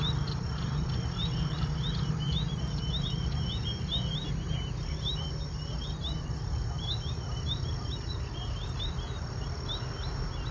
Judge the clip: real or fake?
fake